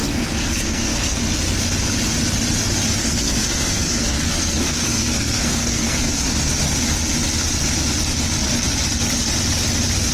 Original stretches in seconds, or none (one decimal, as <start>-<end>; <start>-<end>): 1.2-3.0; 6.5-10.1

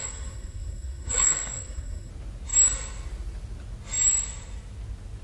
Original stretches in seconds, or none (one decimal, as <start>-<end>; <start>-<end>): 2.1-5.2

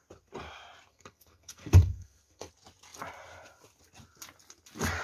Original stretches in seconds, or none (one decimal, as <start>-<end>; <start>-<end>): 0.0-0.9; 2.5-5.0

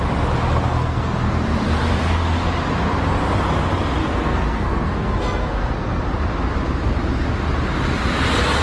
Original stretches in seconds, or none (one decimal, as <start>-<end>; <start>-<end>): 0.0-0.7; 1.3-4.0; 6.0-8.6

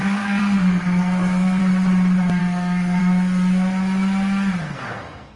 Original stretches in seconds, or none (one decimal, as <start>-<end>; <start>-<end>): 1.6-2.4; 3.0-4.6

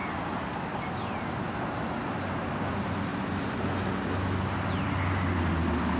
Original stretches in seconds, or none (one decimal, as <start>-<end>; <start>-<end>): 0.0-6.0

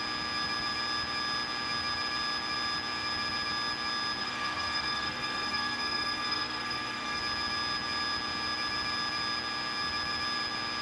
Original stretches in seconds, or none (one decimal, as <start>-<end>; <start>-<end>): 0.0-4.2; 7.2-10.8